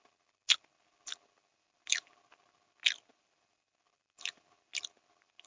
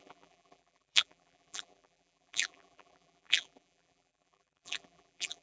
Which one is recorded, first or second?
first